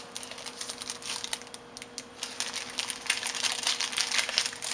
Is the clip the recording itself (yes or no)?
yes